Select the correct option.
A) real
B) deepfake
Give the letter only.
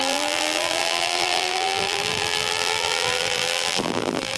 B